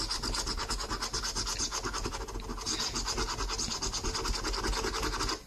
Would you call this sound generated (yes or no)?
no